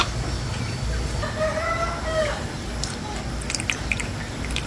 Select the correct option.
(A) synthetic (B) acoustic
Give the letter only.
B